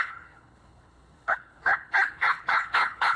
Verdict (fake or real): fake